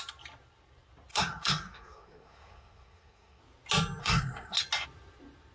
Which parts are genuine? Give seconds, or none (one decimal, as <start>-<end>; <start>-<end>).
0.0-1.1; 3.4-4.0; 4.6-5.5